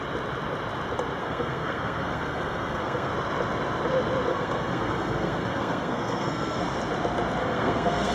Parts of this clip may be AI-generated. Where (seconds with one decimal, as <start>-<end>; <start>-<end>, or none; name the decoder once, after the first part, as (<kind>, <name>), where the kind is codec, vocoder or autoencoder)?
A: 1.2-3.1 (codec, SNAC); 4.3-6.6; 7.4-8.1